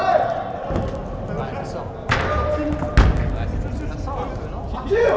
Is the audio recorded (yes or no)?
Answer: yes